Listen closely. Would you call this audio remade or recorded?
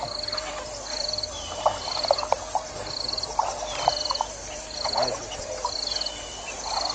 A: recorded